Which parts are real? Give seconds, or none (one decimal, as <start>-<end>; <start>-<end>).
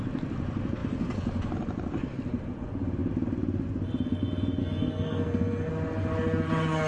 0.0-4.6; 5.7-6.9